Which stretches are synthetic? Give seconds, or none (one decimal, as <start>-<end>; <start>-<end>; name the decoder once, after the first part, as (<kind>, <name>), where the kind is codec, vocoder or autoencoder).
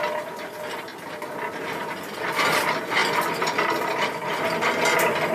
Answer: none